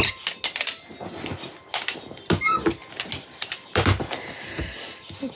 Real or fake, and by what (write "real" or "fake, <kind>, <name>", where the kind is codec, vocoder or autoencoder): real